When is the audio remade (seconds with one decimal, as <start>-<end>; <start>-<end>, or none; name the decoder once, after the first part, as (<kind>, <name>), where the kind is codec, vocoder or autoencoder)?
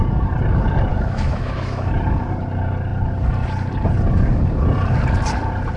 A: 0.9-1.9 (autoencoder, DAC-VAE)